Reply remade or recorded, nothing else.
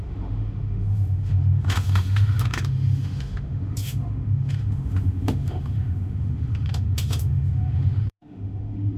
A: remade